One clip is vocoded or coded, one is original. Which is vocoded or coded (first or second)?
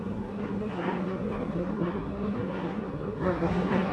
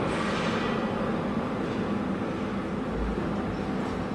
first